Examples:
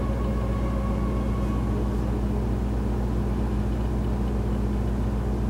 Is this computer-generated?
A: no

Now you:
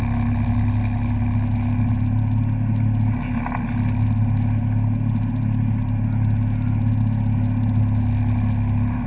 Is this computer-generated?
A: no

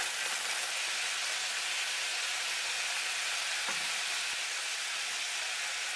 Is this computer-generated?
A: no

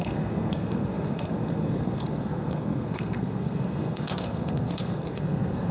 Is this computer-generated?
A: yes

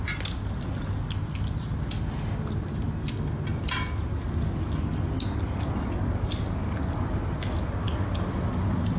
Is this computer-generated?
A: no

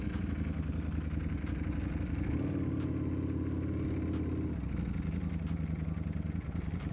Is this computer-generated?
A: no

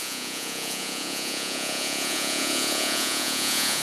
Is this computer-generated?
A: yes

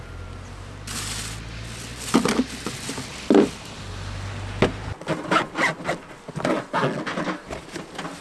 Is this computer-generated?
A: no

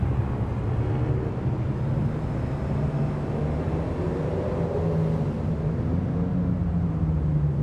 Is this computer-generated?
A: no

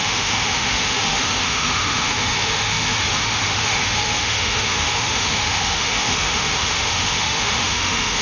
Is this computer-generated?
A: yes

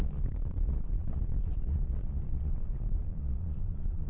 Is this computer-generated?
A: yes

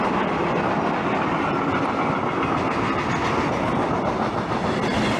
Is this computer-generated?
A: no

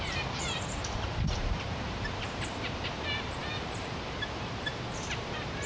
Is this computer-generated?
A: yes